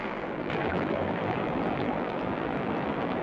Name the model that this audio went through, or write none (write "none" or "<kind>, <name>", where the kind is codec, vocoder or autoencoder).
vocoder, BigVGAN v2